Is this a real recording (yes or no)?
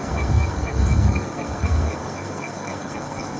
no